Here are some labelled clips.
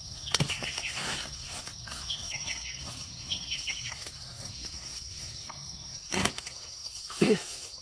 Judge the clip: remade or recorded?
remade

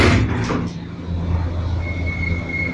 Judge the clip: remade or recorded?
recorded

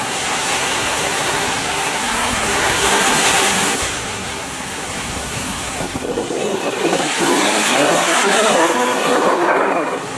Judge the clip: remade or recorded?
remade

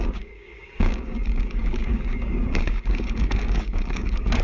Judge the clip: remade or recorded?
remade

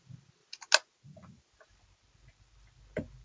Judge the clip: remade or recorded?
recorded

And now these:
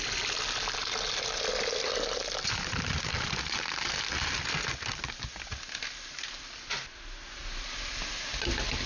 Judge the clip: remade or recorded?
recorded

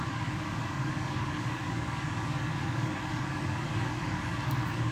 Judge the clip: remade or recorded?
remade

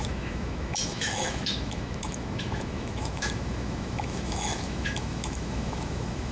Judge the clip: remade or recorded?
remade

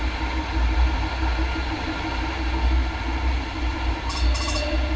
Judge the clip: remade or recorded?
recorded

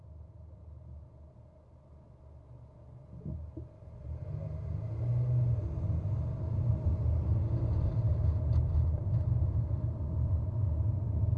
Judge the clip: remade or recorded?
recorded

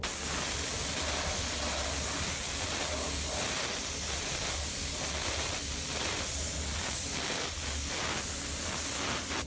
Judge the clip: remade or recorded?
recorded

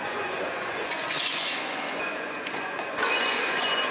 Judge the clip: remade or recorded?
remade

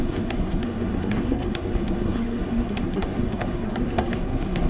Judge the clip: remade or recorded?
remade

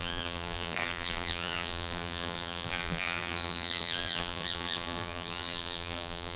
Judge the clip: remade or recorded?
remade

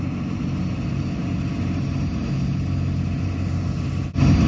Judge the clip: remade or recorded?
recorded